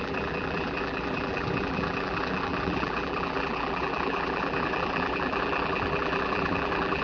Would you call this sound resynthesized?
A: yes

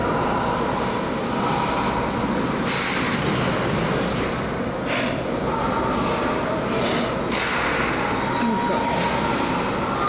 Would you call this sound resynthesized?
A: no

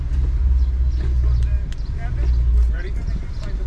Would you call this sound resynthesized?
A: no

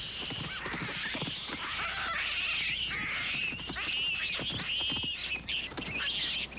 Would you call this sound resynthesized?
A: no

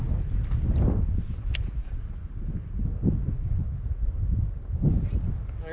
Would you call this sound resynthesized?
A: no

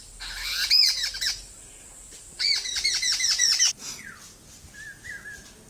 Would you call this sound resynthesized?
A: no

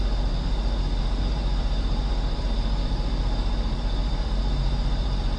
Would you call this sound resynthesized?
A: yes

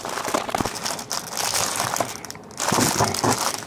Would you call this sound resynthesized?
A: no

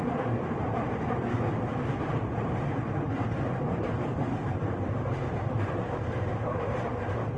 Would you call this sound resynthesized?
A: yes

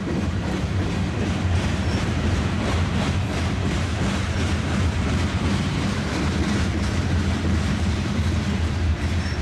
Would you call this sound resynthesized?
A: yes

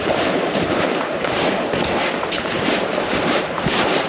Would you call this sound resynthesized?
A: yes